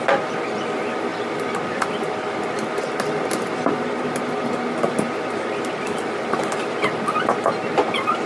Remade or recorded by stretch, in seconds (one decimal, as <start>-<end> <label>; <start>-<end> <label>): 0.0-8.3 recorded